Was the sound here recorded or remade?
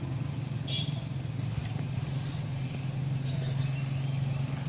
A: recorded